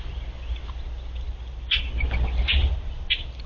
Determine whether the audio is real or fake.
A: real